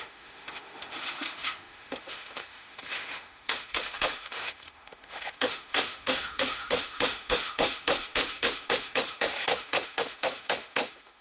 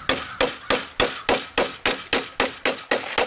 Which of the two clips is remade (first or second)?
first